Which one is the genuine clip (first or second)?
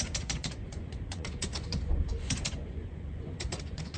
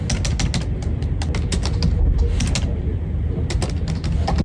second